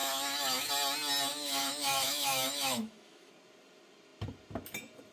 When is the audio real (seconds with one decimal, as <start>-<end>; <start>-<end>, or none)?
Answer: 0.7-1.3; 3.3-5.1